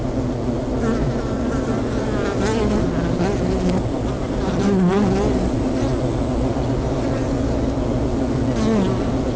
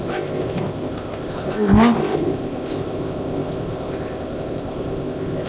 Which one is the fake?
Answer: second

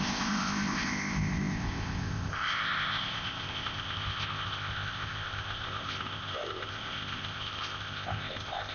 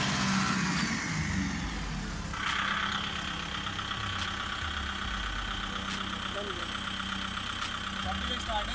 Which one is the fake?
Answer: first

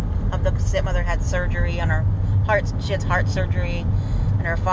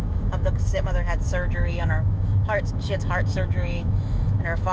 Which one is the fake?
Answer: second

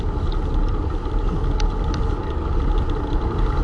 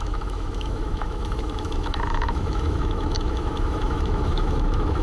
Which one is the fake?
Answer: second